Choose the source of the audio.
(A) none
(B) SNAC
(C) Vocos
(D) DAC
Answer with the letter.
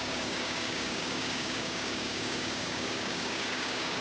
D